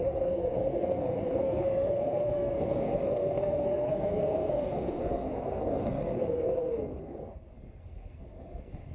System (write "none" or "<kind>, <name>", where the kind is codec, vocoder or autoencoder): codec, SNAC